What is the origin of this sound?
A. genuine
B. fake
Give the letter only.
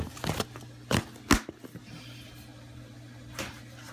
A